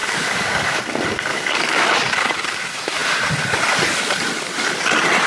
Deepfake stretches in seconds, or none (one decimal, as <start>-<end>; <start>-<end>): 0.0-0.8; 1.3-1.9